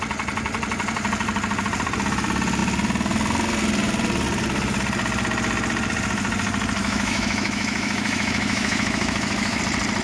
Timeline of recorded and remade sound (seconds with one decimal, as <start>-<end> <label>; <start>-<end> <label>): 0.0-6.8 recorded; 6.8-9.6 remade; 9.6-10.0 recorded